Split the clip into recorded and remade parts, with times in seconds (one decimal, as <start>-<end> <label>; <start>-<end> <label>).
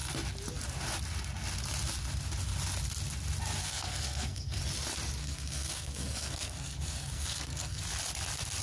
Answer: 0.0-3.6 recorded; 3.6-4.6 remade; 4.6-5.2 recorded; 5.2-7.8 remade; 7.8-8.6 recorded